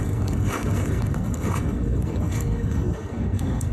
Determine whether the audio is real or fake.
fake